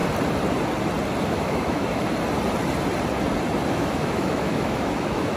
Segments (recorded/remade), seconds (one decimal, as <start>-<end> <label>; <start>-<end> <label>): 0.0-1.2 recorded; 1.2-2.1 remade; 2.1-3.7 recorded; 3.7-5.4 remade